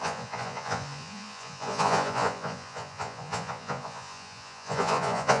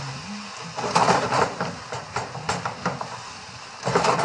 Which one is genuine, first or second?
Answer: second